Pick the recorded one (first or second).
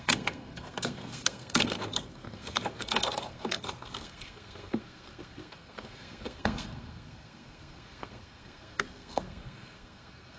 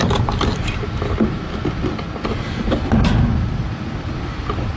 second